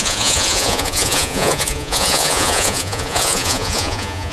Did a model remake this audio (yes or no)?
yes